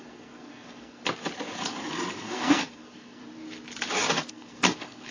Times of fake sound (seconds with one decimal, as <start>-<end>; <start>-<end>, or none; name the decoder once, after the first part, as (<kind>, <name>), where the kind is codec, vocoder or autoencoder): 0.0-1.0 (codec, SNAC); 2.2-3.2; 4.3-5.1